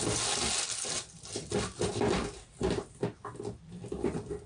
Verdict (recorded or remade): recorded